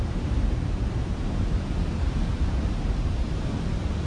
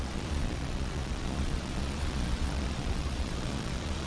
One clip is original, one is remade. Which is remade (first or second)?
second